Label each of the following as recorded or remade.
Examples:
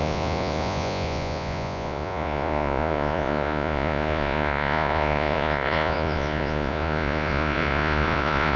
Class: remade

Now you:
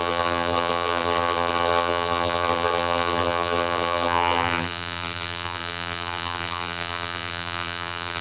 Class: remade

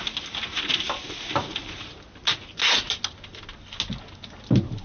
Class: recorded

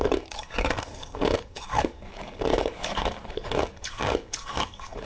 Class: remade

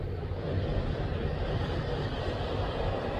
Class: recorded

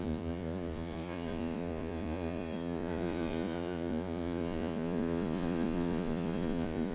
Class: remade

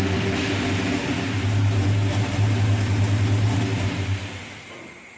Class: recorded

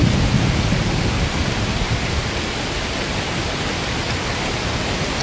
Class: recorded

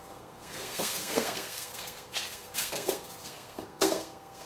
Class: remade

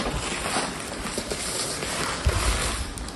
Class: recorded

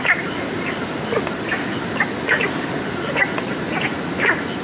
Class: recorded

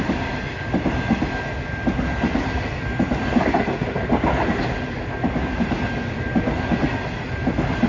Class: recorded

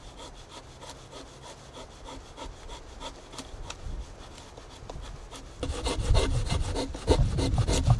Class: recorded